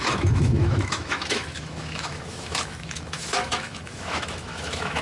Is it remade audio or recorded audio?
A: remade